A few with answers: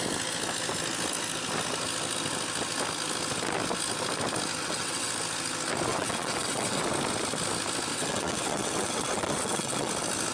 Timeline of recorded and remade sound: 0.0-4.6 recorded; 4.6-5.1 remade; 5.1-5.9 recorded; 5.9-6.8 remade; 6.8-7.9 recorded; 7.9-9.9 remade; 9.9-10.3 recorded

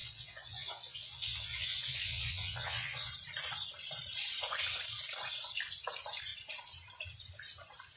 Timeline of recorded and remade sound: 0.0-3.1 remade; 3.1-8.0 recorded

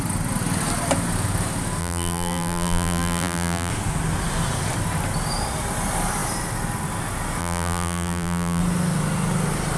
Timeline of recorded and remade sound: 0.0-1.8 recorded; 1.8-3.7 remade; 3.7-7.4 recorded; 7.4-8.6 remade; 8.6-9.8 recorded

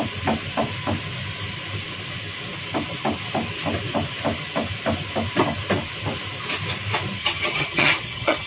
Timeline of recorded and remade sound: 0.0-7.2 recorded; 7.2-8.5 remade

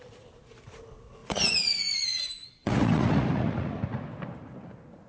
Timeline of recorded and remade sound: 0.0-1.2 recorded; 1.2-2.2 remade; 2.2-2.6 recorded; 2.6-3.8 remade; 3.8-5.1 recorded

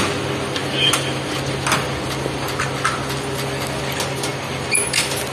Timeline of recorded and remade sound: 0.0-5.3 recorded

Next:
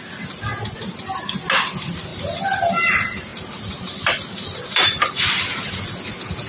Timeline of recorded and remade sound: 0.0-2.1 recorded; 2.1-2.7 remade; 2.7-3.3 recorded; 3.3-5.8 remade; 5.8-6.5 recorded